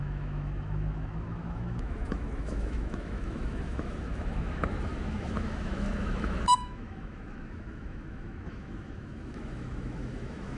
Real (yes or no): no